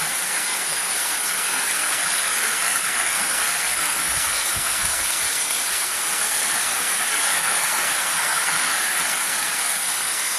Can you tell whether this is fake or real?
fake